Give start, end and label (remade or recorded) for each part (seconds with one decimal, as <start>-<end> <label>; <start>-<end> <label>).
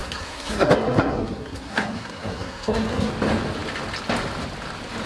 0.0-3.1 remade; 3.1-5.1 recorded